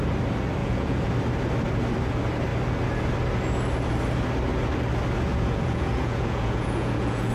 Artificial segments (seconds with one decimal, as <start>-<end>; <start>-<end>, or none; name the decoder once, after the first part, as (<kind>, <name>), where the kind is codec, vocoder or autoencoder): 0.6-1.1 (vocoder, Vocos); 5.3-7.3